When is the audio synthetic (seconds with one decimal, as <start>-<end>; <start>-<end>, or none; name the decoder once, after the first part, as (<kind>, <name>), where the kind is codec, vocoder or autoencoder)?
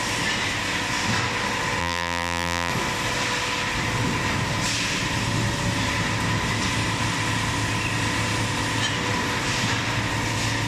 1.8-2.7 (vocoder, BigVGAN v2)